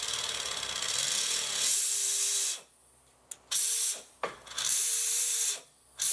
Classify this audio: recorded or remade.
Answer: recorded